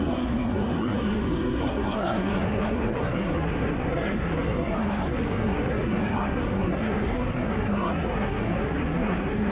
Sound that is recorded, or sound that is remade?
remade